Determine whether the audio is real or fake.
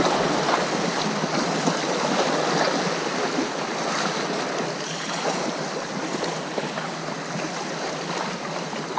real